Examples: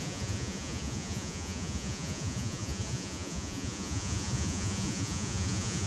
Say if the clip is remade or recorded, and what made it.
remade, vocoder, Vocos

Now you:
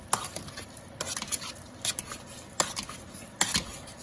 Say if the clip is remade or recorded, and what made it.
recorded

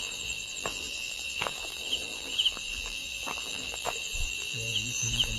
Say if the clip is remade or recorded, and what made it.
remade, vocoder, BigVGAN v2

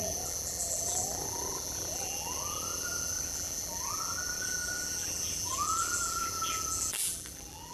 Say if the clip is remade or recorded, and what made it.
remade, vocoder, BigVGAN v2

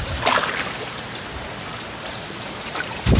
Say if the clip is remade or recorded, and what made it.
recorded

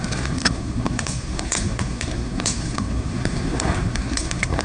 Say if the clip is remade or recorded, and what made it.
remade, codec, SNAC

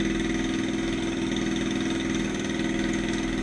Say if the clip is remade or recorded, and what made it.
recorded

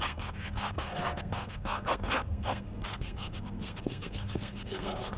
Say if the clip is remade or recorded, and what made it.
remade, codec, SNAC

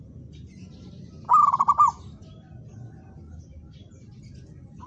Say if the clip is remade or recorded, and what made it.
recorded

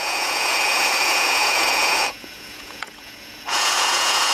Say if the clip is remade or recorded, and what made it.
remade, vocoder, Vocos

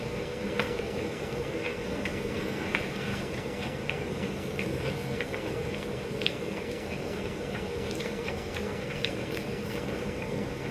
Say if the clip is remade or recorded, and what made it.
remade, codec, SNAC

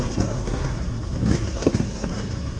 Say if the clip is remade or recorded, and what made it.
remade, codec, SNAC